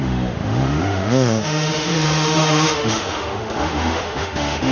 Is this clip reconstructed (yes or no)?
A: yes